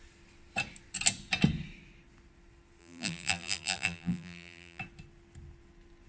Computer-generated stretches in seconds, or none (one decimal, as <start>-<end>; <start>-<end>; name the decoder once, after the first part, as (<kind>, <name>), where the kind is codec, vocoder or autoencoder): 2.8-4.8 (vocoder, BigVGAN v2)